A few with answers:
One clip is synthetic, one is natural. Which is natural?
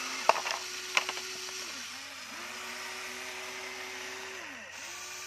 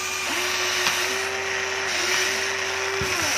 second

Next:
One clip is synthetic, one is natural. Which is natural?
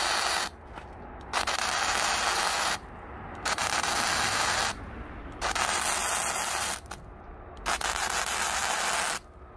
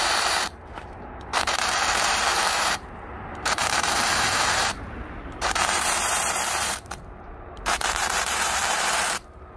first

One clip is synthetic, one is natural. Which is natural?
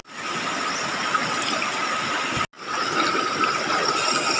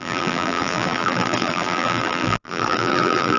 first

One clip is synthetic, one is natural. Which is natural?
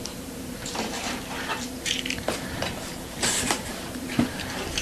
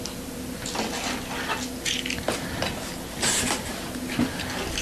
second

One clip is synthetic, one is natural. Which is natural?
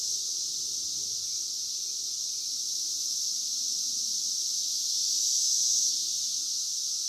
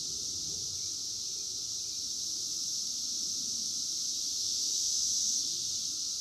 first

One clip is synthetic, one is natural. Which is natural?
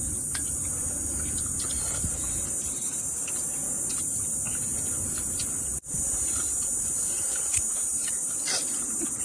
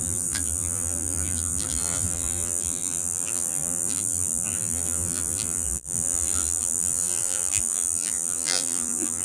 first